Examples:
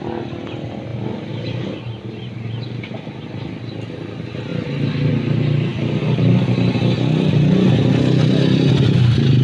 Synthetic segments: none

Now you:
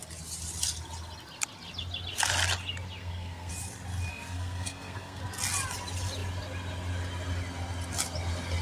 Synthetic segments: 3.0-3.5; 4.1-5.2

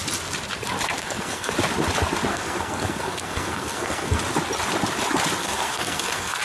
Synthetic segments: 1.0-1.5; 2.3-4.2; 5.4-6.4

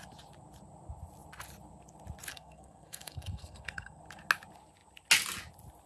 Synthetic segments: 2.3-4.0

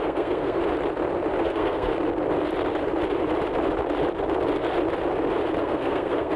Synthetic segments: 0.0-0.6; 1.4-1.9; 5.6-6.4